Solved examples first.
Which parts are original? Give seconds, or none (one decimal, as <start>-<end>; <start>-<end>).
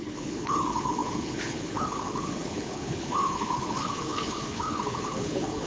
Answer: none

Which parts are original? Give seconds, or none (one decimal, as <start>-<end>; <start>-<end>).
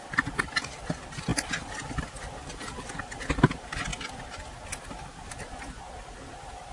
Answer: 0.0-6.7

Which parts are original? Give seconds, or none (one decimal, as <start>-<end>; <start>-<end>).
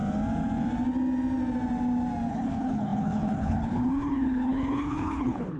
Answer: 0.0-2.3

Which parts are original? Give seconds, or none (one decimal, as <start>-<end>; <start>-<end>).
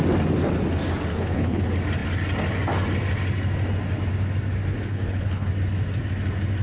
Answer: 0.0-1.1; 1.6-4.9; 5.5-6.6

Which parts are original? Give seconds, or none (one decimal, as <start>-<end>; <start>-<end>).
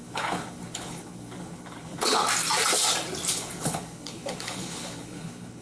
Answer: 2.2-3.3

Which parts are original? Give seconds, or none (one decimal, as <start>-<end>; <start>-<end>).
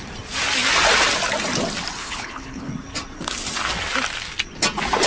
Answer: 0.0-2.0; 2.7-5.1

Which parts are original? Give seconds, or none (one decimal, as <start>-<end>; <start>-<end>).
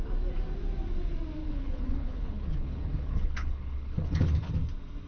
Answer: 0.0-1.4; 4.5-5.1